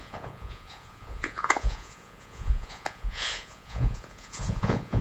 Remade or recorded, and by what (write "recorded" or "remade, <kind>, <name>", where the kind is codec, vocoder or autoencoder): remade, vocoder, Vocos